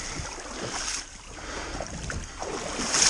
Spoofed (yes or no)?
no